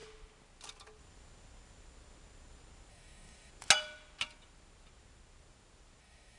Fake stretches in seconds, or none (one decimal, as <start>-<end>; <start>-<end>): 2.9-3.5; 6.0-6.4